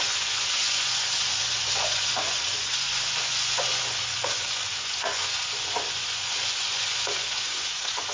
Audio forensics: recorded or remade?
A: remade